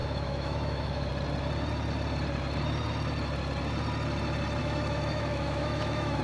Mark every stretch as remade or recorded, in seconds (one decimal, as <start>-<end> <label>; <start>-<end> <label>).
0.0-1.1 remade; 1.1-4.6 recorded; 4.6-6.2 remade